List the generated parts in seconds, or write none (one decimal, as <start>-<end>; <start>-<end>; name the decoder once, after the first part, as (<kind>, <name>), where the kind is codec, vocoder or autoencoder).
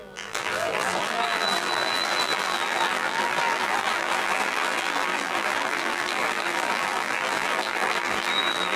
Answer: 0.0-8.8 (vocoder, BigVGAN v2)